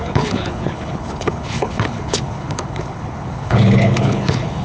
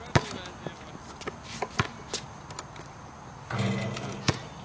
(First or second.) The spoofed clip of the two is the first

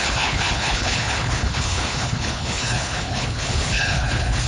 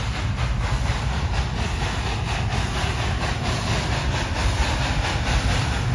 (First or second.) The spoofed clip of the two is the first